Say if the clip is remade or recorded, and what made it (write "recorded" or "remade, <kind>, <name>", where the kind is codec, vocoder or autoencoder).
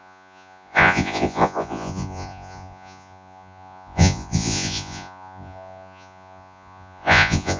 remade, vocoder, Vocos